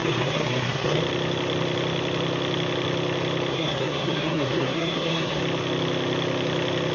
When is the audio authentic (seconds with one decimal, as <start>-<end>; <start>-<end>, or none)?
1.0-3.5; 5.4-6.9